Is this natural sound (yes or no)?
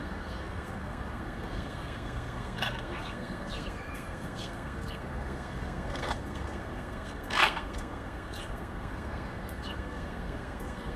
no